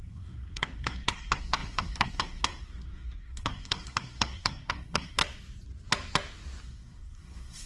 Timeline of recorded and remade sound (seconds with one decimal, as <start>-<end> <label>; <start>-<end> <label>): 0.0-5.2 remade; 5.2-6.6 recorded; 6.6-7.7 remade